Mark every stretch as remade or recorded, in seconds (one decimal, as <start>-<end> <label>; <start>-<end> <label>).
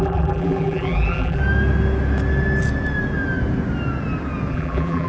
0.0-1.4 remade; 1.4-4.5 recorded; 4.5-5.1 remade